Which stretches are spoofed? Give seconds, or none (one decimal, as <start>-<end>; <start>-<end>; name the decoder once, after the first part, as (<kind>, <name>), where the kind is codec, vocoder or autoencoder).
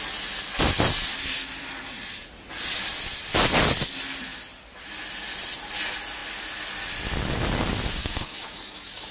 8.0-9.1 (codec, DAC)